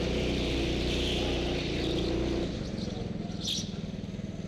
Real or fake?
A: real